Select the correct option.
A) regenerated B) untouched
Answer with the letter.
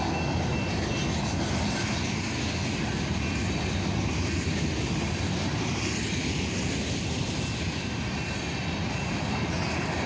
B